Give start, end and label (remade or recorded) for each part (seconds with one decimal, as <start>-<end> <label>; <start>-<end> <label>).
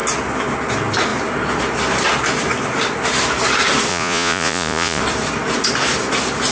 0.0-3.9 recorded; 3.9-5.0 remade; 5.0-6.5 recorded